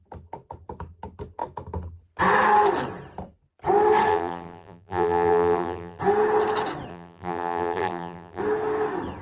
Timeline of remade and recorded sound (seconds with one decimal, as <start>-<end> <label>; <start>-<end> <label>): 0.0-4.1 recorded; 4.1-6.0 remade; 6.0-6.9 recorded; 6.9-8.4 remade; 8.4-9.2 recorded